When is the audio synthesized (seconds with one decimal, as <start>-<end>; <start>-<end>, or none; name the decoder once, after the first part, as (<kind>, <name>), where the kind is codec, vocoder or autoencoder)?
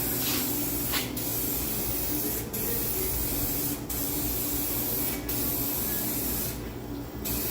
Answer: none